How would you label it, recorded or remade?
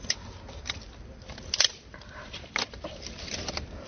recorded